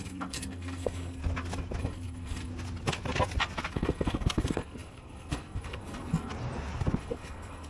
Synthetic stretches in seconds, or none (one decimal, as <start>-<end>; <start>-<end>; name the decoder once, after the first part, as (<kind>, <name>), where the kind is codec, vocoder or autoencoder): 0.0-1.2 (codec, SNAC); 1.8-2.5; 3.7-6.3; 7.0-7.7